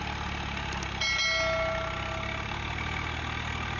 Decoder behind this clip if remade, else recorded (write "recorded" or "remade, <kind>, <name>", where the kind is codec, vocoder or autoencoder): recorded